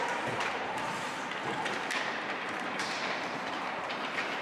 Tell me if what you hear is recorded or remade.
remade